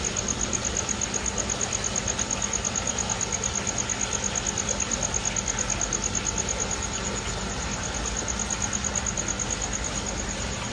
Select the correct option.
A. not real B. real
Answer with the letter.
B